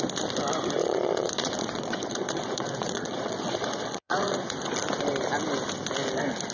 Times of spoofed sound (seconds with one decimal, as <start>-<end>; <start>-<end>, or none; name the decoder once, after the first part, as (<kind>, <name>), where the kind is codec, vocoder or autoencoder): 0.8-4.5 (vocoder, Vocos)